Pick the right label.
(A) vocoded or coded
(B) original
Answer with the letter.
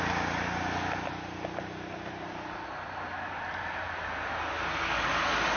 B